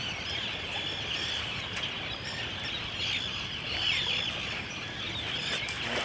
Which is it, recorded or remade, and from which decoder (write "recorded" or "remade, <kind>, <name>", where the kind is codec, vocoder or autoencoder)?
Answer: recorded